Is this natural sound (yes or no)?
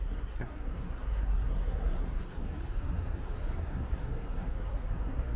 no